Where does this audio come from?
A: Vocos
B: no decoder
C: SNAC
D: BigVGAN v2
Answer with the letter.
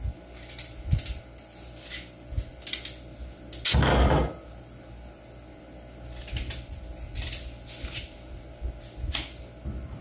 B